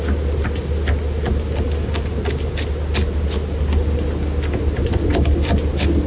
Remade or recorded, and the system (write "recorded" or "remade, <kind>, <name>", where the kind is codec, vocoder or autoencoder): recorded